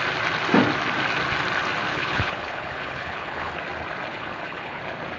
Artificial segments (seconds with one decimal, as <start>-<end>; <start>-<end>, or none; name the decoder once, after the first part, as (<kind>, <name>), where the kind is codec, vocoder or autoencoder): 1.9-3.5 (codec, HILCodec); 4.1-4.8